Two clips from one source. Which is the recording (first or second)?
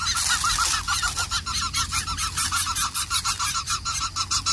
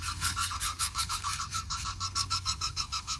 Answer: first